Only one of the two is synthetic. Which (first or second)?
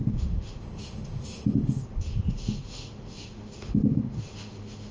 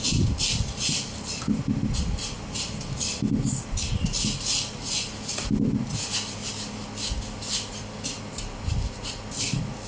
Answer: first